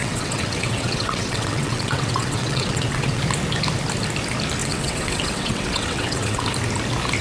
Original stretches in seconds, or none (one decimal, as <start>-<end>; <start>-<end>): 3.2-4.6; 6.4-7.2